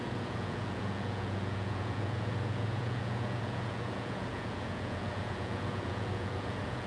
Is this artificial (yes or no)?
yes